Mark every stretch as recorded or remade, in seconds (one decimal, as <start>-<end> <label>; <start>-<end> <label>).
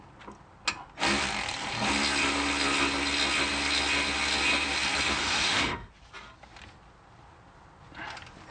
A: 0.0-5.2 recorded; 5.2-5.9 remade; 5.9-8.5 recorded